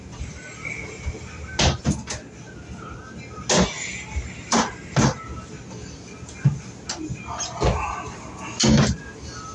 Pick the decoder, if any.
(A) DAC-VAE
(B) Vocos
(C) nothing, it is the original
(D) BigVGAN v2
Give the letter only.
C